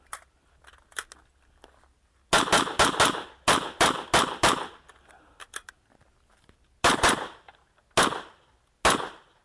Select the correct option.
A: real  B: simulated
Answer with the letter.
A